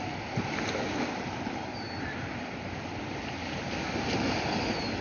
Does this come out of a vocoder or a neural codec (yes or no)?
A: no